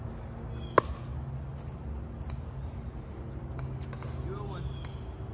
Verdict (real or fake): real